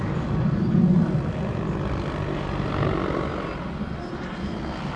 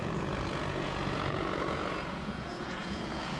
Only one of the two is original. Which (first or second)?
first